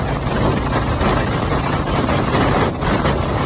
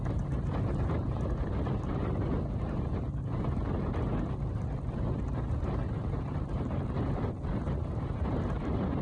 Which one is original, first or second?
first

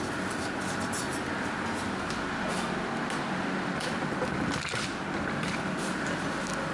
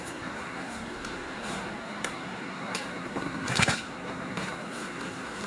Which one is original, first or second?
first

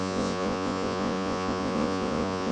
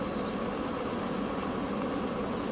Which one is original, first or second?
second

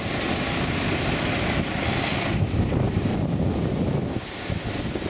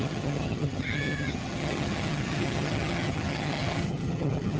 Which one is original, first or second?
first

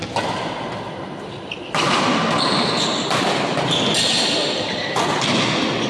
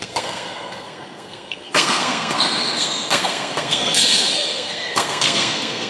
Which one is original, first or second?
first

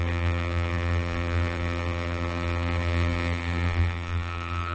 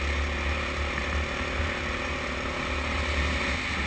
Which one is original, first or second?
second